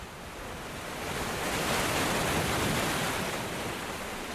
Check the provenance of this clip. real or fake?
real